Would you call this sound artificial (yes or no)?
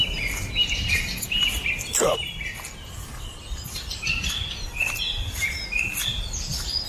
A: no